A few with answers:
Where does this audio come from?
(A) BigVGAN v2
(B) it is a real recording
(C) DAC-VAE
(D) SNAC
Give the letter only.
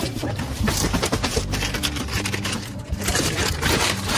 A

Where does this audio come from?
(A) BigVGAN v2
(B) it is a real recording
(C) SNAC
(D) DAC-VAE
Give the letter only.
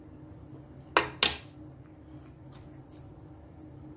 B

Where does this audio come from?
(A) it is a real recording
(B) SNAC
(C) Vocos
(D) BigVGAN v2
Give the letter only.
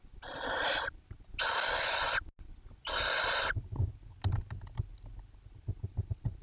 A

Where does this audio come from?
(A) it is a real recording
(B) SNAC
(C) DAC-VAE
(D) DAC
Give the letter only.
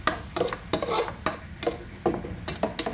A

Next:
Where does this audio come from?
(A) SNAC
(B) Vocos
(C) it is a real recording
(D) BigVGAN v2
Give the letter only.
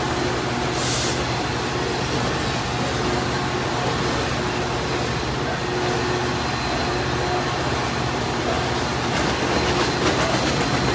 C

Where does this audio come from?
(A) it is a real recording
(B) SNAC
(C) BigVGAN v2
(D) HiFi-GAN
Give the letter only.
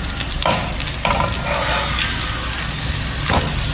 A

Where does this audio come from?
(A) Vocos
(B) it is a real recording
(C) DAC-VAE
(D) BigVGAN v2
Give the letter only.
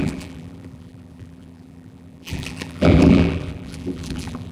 D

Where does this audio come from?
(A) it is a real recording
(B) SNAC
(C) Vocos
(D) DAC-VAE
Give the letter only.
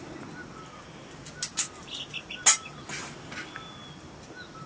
A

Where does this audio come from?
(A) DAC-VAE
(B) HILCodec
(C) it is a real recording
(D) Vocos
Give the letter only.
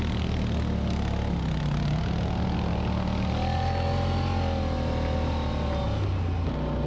C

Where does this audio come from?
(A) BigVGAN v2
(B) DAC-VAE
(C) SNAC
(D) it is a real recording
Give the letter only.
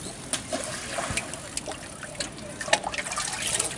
D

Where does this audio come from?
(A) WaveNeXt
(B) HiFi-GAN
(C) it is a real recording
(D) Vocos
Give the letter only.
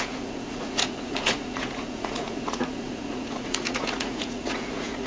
D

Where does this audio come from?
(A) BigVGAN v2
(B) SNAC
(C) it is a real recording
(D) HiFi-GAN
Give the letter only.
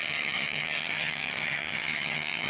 D